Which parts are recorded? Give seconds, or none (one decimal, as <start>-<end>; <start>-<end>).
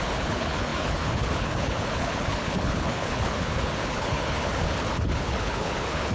none